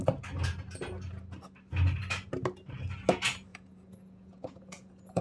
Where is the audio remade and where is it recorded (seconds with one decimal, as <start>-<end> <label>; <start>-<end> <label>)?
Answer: 0.0-3.5 recorded; 3.5-5.2 remade